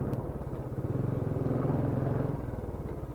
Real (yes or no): yes